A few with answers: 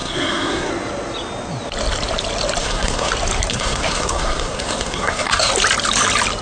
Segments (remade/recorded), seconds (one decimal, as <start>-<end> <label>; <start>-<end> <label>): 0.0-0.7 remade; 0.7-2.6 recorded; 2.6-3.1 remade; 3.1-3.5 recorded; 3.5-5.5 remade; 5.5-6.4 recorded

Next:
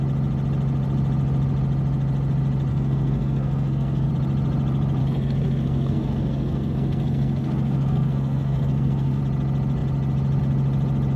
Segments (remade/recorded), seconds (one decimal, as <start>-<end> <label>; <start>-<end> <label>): 0.0-2.7 recorded; 2.7-4.1 remade; 4.1-5.0 recorded; 5.0-9.2 remade; 9.2-11.2 recorded

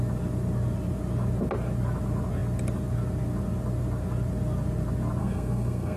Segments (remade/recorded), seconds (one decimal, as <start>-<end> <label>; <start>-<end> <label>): 0.0-5.2 recorded; 5.2-6.0 remade